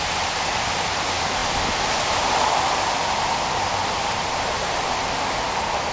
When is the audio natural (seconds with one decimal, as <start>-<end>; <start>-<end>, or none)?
0.0-5.9